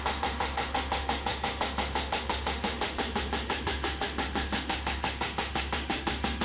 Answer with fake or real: fake